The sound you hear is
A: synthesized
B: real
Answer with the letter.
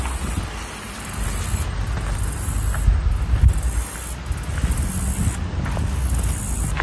B